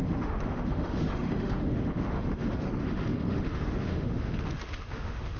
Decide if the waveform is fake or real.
fake